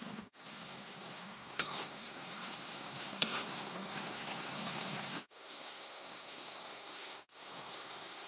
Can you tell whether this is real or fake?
fake